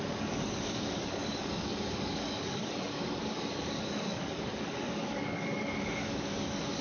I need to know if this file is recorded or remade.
remade